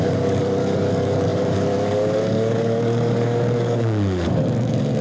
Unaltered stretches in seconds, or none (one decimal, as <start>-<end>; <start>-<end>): none